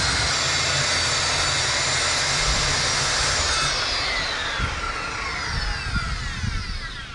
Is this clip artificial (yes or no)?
no